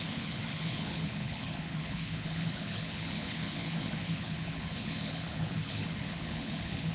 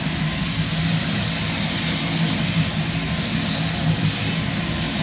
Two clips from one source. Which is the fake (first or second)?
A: first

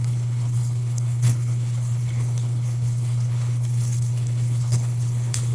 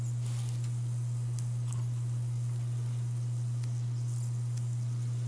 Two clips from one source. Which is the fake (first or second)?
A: first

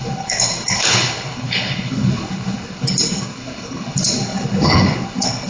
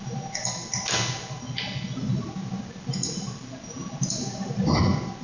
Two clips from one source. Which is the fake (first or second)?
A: first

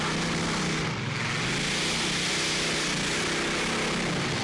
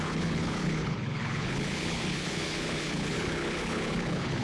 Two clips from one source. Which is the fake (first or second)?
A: second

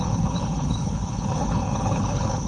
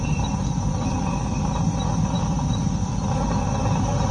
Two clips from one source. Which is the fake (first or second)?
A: first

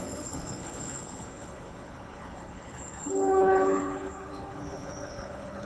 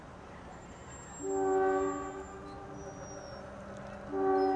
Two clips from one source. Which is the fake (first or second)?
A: first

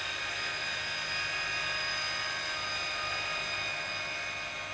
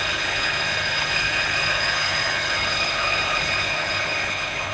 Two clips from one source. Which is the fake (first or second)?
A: second